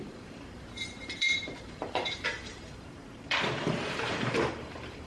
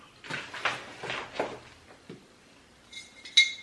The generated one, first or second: first